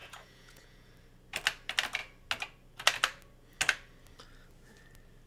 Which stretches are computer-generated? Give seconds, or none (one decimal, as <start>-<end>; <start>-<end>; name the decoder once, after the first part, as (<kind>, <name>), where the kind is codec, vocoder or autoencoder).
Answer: 0.0-0.9 (vocoder, Vocos)